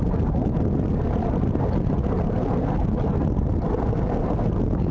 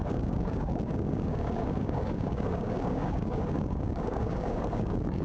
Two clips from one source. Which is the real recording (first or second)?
first